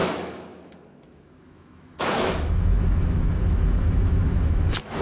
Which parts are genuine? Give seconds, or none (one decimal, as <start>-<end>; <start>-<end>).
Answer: none